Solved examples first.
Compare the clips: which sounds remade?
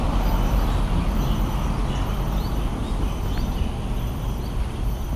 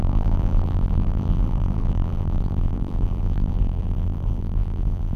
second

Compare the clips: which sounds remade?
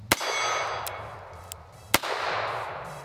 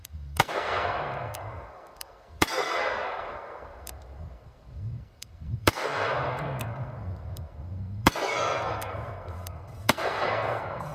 second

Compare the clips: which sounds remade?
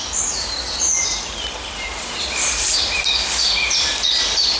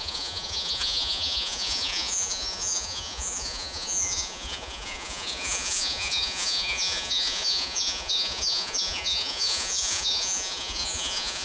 second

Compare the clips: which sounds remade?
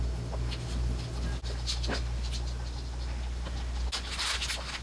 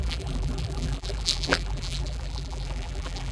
second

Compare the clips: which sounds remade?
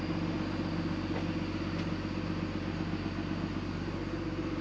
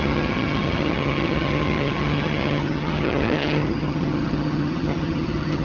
second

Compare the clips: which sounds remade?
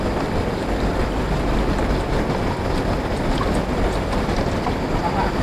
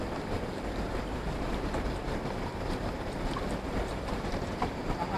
second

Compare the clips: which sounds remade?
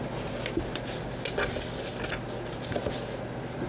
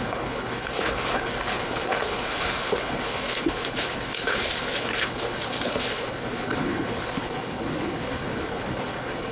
second